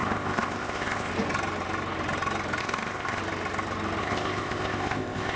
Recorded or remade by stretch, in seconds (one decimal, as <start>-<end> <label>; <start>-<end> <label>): 0.0-1.1 remade; 1.1-2.6 recorded; 2.6-3.2 remade; 3.2-4.0 recorded; 4.0-5.4 remade